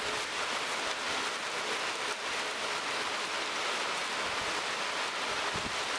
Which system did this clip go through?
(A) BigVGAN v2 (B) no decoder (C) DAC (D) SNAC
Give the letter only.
B